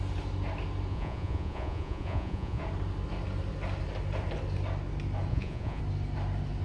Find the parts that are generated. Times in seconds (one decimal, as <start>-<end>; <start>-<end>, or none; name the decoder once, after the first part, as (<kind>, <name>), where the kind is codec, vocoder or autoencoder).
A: 0.9-2.6 (vocoder, Vocos); 5.3-5.8